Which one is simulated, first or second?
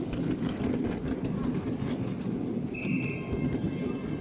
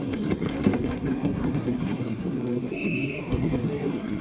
second